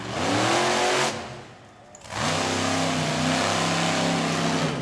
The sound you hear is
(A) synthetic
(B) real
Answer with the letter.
B